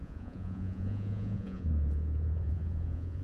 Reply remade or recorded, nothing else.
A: remade